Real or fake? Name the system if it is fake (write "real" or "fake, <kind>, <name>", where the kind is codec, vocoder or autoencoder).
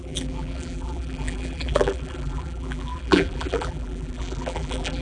fake, vocoder, BigVGAN v2